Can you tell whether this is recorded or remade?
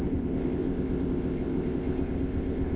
remade